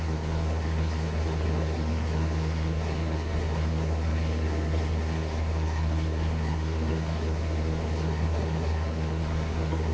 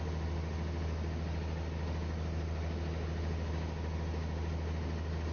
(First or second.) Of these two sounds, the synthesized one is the first